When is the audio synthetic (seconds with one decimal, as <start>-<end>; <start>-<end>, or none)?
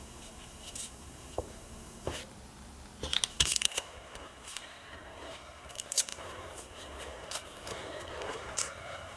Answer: 0.0-2.2; 3.3-9.2